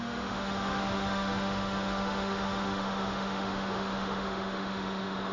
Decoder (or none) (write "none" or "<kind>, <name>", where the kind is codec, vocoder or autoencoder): autoencoder, DAC-VAE